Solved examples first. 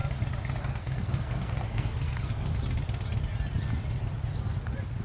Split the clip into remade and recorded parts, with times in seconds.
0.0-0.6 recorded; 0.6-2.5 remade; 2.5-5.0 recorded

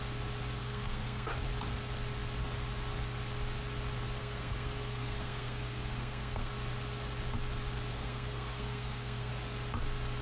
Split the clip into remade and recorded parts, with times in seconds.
0.0-0.6 recorded; 0.6-1.3 remade; 1.3-4.2 recorded; 4.2-6.5 remade; 6.5-7.9 recorded; 7.9-9.3 remade; 9.3-10.2 recorded